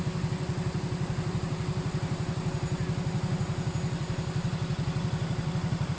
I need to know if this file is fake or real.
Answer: real